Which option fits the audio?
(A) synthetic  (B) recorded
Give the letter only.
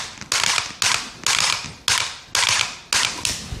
B